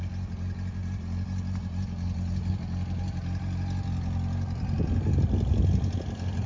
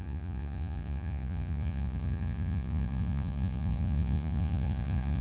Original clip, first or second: first